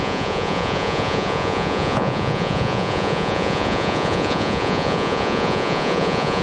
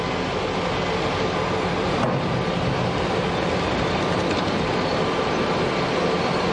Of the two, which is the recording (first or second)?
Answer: second